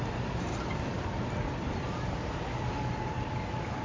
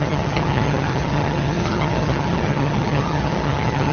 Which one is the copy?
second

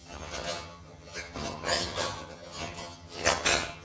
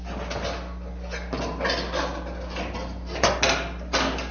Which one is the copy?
first